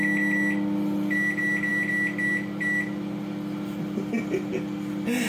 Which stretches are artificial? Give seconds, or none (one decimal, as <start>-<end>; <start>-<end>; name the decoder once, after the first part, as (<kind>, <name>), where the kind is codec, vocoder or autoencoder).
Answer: none